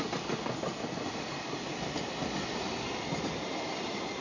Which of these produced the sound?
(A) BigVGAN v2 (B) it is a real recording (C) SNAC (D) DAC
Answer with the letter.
B